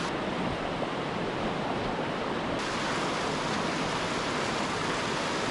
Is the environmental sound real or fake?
real